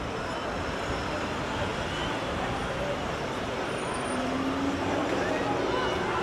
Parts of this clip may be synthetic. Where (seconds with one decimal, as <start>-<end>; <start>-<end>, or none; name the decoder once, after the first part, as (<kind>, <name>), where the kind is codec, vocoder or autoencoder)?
none